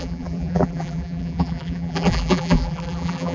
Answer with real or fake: fake